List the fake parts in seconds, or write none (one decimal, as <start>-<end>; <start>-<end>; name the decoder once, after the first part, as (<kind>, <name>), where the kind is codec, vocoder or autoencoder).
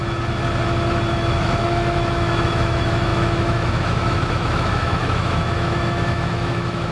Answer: 1.1-6.9 (autoencoder, DAC-VAE)